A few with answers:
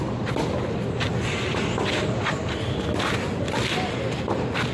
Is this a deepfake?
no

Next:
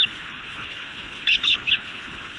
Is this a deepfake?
yes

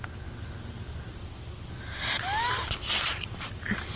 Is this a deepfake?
no